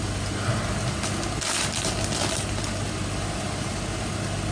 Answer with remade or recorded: recorded